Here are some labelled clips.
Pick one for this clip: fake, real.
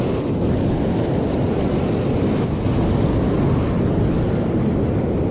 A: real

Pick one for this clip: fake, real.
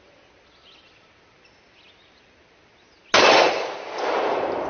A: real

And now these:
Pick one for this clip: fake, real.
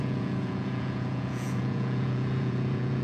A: fake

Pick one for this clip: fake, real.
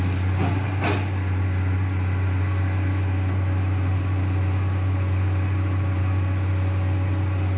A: real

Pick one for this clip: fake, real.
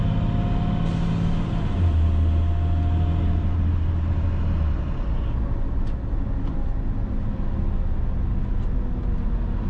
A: real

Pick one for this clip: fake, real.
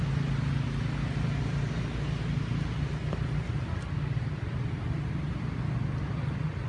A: real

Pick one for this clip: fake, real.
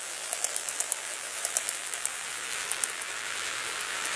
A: fake